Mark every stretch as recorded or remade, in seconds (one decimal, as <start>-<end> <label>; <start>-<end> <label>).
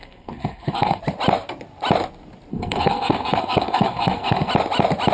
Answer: 0.0-1.0 remade; 1.0-2.5 recorded; 2.5-4.5 remade; 4.5-5.1 recorded